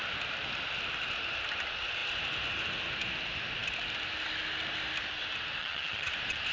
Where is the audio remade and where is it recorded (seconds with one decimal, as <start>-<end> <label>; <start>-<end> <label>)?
0.0-5.6 recorded; 5.6-6.1 remade; 6.1-6.5 recorded